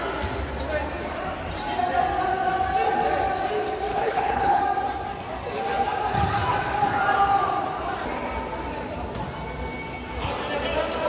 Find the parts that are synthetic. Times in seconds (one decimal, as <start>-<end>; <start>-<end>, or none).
3.9-4.6